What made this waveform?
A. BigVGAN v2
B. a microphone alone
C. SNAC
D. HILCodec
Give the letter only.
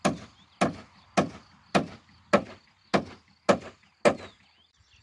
B